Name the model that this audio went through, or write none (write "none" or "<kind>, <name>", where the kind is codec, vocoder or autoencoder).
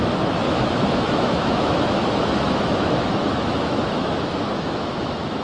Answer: autoencoder, DAC-VAE